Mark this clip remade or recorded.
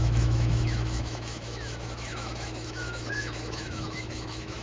remade